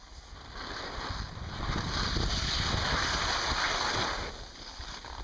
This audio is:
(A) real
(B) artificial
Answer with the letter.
A